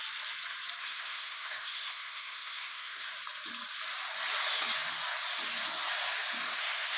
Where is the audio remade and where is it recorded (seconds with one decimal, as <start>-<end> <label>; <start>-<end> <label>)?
0.0-0.8 recorded; 0.8-3.1 remade; 3.1-6.4 recorded; 6.4-7.0 remade